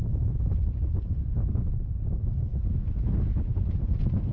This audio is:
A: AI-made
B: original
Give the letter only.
B